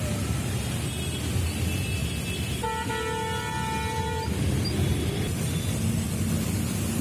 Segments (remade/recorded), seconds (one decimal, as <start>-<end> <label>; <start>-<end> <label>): 0.0-7.0 recorded